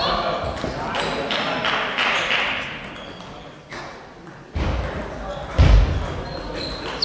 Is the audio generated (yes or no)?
no